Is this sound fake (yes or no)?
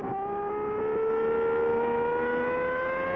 no